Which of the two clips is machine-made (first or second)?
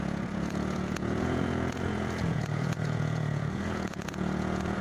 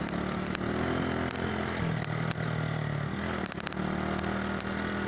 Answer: first